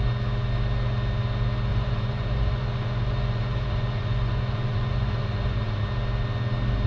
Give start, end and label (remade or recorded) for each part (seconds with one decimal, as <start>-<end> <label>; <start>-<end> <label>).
0.0-1.7 recorded; 1.7-5.8 remade; 5.8-6.9 recorded